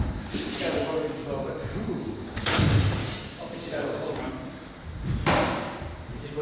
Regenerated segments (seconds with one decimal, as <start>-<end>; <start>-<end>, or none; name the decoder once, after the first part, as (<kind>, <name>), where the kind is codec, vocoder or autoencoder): 3.0-4.3 (codec, DAC)